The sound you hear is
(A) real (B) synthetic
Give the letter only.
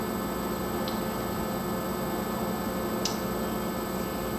A